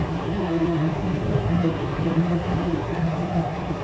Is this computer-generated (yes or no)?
yes